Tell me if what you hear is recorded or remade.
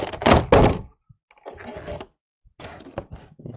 recorded